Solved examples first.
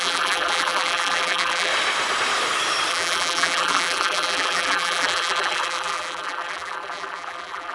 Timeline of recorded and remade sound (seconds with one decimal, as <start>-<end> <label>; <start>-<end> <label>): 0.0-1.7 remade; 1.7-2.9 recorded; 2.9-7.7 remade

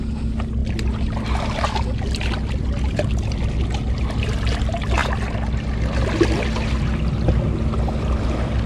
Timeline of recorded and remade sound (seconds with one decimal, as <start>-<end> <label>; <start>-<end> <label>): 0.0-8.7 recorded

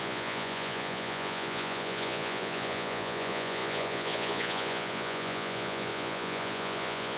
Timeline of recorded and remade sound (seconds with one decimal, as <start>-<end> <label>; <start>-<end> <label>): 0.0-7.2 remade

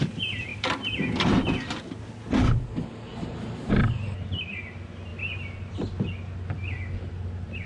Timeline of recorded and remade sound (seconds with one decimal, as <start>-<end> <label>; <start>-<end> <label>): 0.0-0.5 recorded; 0.5-1.1 remade; 1.1-3.1 recorded; 3.1-3.8 remade; 3.8-7.7 recorded

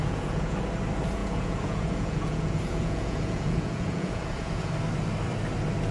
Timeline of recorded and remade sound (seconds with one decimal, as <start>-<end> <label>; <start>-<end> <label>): 0.0-0.6 remade; 0.6-1.2 recorded; 1.2-4.7 remade; 4.7-5.9 recorded